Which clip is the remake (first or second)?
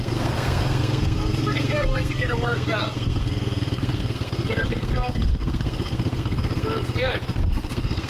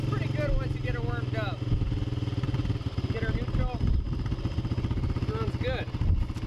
first